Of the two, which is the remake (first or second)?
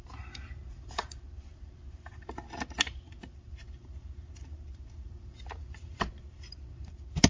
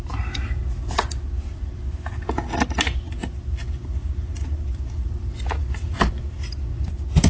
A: first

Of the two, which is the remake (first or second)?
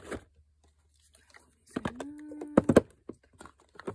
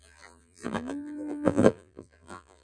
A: second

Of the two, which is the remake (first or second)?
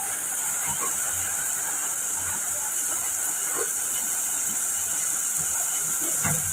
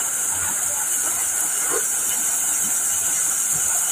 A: first